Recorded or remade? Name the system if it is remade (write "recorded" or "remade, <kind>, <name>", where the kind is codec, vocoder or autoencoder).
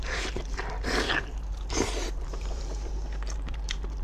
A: remade, vocoder, BigVGAN v2